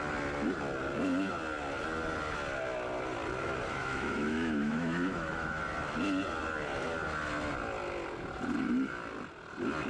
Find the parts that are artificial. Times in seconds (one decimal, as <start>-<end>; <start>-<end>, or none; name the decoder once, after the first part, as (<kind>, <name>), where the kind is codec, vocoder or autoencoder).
3.8-5.6 (autoencoder, DAC-VAE)